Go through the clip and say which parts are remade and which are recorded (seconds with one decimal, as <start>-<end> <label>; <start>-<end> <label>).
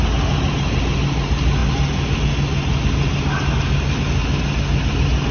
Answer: 0.0-5.3 recorded